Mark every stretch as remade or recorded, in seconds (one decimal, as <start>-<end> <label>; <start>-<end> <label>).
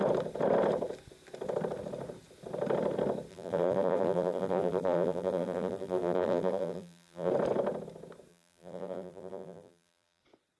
0.0-3.3 recorded; 3.3-7.3 remade; 7.3-8.3 recorded; 8.3-10.2 remade; 10.2-10.6 recorded